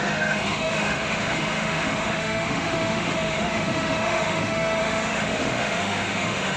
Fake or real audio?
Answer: fake